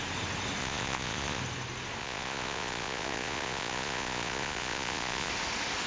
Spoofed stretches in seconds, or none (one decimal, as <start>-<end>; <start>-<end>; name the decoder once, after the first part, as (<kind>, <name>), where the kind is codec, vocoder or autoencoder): 0.6-1.4 (vocoder, Vocos); 2.0-5.3